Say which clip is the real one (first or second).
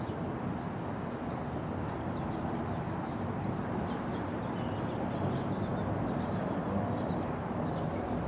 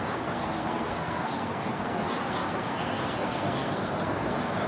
first